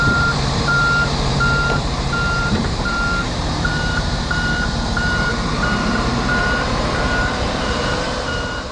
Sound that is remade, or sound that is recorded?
remade